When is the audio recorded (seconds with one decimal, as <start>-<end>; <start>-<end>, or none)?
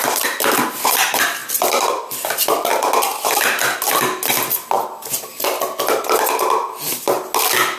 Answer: 0.0-7.8